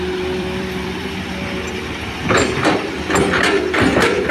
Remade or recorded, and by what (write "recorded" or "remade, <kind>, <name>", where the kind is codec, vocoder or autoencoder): remade, vocoder, BigVGAN v2